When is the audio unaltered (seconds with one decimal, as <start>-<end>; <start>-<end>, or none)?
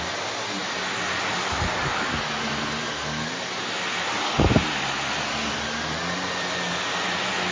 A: 0.0-7.5